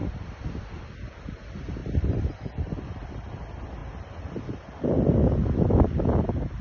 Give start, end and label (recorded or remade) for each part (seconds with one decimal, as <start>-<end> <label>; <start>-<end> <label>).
0.0-1.8 recorded; 1.8-3.3 remade; 3.3-3.8 recorded; 3.8-4.3 remade; 4.3-6.6 recorded